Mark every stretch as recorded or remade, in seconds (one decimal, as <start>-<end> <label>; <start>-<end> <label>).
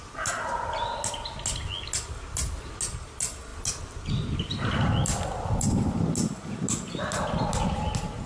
0.0-8.3 recorded